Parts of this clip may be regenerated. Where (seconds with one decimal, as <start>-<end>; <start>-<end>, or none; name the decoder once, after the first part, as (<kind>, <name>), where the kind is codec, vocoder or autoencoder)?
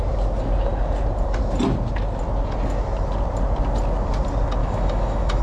4.6-5.4 (autoencoder, DAC-VAE)